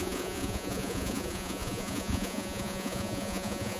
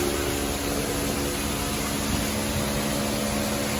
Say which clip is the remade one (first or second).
first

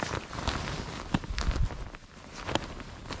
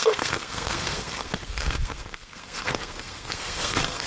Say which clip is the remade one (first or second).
second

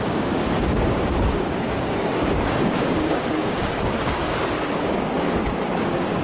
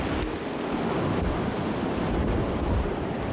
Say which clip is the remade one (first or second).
first